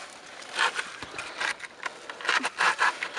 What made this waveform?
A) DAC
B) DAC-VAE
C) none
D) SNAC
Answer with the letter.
C